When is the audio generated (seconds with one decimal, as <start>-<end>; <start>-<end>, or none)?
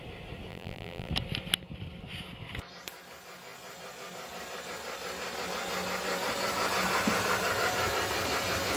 0.5-1.1